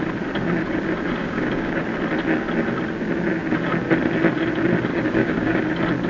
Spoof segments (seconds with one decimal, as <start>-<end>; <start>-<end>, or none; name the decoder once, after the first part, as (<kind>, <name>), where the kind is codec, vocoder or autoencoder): 1.2-1.8 (codec, DAC); 4.9-5.6